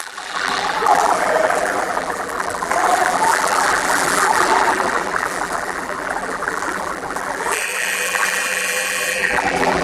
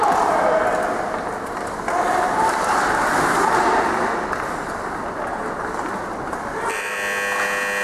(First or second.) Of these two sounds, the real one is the second